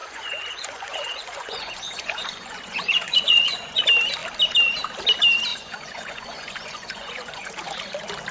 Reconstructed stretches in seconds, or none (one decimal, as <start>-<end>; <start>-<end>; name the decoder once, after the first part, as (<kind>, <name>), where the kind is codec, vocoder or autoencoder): 0.0-3.8 (vocoder, Vocos); 5.5-7.5